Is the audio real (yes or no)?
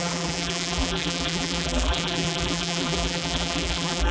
no